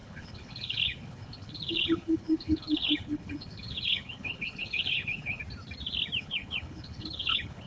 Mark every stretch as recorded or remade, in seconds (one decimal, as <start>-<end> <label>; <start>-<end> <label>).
0.0-5.4 remade; 5.4-6.2 recorded; 6.2-7.7 remade